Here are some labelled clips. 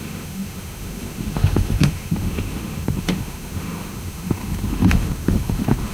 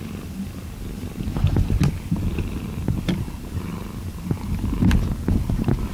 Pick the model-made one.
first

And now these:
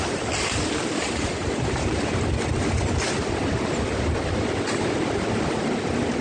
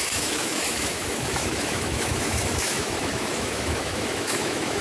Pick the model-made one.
second